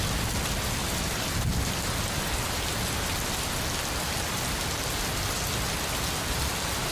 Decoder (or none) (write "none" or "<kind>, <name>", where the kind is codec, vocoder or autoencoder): none